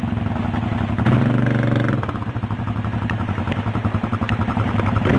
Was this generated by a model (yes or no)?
no